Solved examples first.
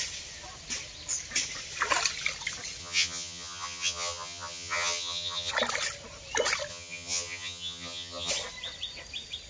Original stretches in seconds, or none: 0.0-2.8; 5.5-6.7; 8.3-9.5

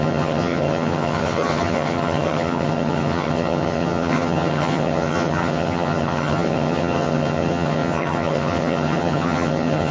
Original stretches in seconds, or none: none

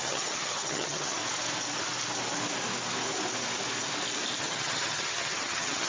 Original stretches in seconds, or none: 1.2-4.4

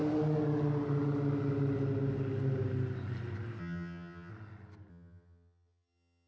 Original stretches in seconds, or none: 0.0-3.6; 4.3-4.9

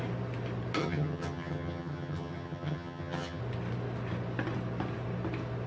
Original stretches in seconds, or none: 0.0-0.8; 3.4-5.7

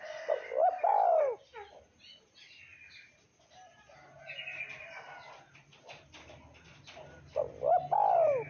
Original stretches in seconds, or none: 0.0-8.5

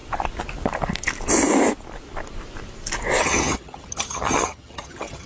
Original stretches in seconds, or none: 0.0-3.2

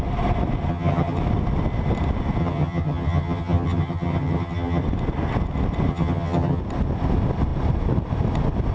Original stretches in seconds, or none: 0.0-0.7; 1.2-2.4; 4.8-5.9; 6.6-8.7